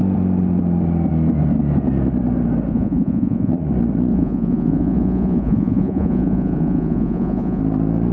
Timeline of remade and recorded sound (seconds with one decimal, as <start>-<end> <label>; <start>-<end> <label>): 0.0-2.7 recorded; 2.7-3.5 remade; 3.5-4.1 recorded; 4.1-7.6 remade; 7.6-8.1 recorded